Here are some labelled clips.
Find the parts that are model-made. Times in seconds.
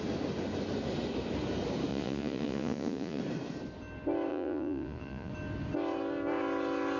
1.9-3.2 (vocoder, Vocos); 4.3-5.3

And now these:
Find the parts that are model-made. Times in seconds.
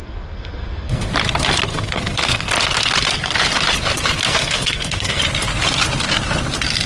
0.0-1.1 (codec, SNAC); 1.7-2.5; 4.3-5.2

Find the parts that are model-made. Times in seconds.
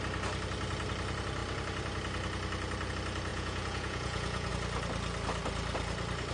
3.3-4.5 (vocoder, Vocos)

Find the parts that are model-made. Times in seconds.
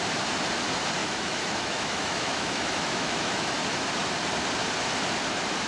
1.0-3.5 (autoencoder, DAC-VAE)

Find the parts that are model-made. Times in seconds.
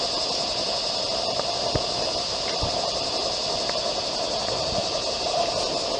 none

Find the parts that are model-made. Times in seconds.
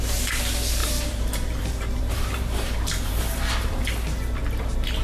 0.8-3.8 (vocoder, BigVGAN v2)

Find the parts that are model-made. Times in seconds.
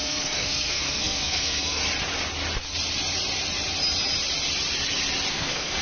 0.0-1.8 (codec, SNAC); 5.3-5.8